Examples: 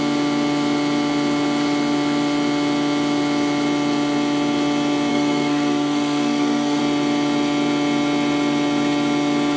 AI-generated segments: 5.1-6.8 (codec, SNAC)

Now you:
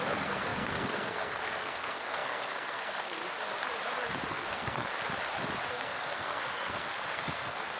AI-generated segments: 0.0-3.2 (codec, SNAC); 4.3-4.9; 5.7-7.8

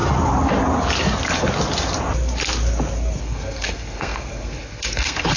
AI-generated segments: 3.2-5.4 (codec, SNAC)

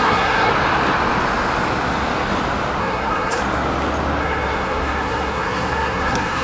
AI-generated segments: 0.0-0.5 (codec, SNAC); 2.8-3.4; 4.2-6.4

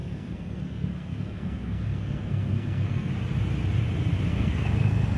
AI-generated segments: 0.0-3.1 (codec, SNAC); 4.3-5.2